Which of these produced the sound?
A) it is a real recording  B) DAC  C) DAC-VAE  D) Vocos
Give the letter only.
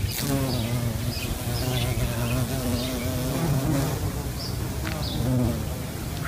A